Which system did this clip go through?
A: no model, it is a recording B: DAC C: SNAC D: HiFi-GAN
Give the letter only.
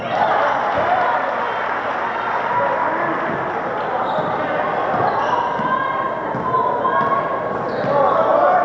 A